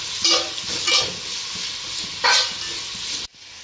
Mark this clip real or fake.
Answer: real